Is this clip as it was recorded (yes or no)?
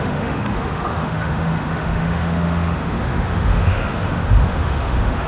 no